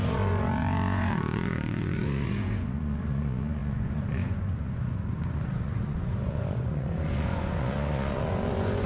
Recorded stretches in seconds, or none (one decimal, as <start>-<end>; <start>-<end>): none